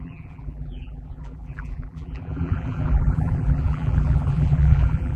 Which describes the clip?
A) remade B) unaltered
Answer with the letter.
A